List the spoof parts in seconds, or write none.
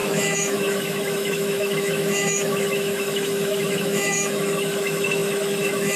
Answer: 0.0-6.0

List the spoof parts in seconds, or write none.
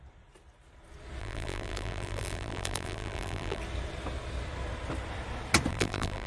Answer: 1.2-3.6; 5.7-6.3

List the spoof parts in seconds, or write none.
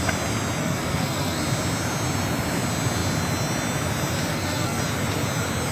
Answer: 0.6-1.4; 4.3-4.8